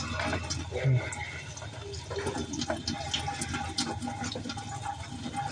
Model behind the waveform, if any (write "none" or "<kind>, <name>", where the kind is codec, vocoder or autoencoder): none